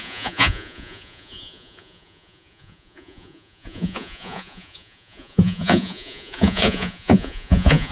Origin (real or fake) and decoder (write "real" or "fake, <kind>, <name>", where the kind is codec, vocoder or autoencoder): fake, vocoder, Vocos